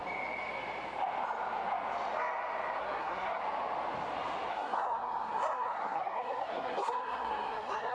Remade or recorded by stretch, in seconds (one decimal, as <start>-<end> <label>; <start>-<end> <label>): 0.0-2.8 recorded; 2.8-3.4 remade; 3.4-4.5 recorded; 4.5-7.9 remade